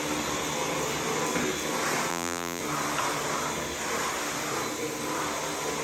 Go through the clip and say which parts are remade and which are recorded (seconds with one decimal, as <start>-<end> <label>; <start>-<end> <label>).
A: 0.0-2.1 recorded; 2.1-2.6 remade; 2.6-5.8 recorded

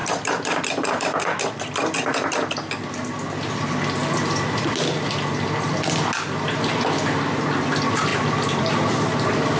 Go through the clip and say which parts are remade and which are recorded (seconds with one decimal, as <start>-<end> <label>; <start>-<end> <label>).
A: 0.0-1.0 remade; 1.0-8.1 recorded; 8.1-8.7 remade; 8.7-9.6 recorded